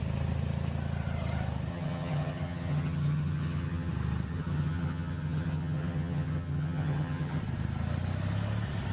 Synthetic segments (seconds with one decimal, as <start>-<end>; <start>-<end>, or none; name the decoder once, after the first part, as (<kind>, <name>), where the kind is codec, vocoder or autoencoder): 1.7-3.9 (vocoder, HiFi-GAN); 4.3-7.4